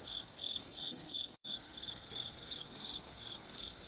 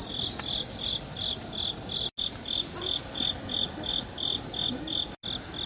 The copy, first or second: first